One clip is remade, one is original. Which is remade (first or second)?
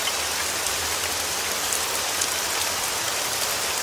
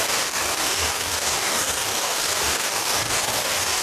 second